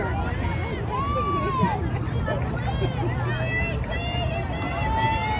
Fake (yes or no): no